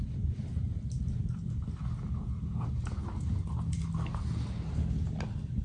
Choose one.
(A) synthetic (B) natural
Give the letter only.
B